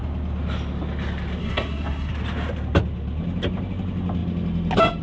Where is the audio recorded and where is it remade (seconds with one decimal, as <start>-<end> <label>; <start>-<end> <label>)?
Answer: 0.0-1.4 recorded; 1.4-2.1 remade; 2.1-5.0 recorded